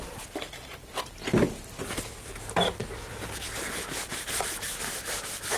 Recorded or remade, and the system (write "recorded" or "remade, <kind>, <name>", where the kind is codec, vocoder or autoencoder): recorded